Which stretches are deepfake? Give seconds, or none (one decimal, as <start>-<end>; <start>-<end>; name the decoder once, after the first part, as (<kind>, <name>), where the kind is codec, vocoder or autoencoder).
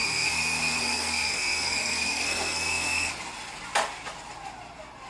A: 0.0-3.1 (codec, SNAC)